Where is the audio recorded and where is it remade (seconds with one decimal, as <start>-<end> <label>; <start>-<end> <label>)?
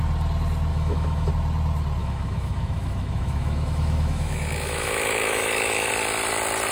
0.0-0.7 recorded; 0.7-1.3 remade; 1.3-2.0 recorded; 2.0-5.9 remade; 5.9-6.7 recorded